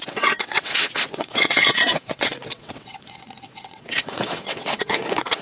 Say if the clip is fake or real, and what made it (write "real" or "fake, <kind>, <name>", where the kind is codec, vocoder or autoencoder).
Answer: fake, vocoder, WaveNeXt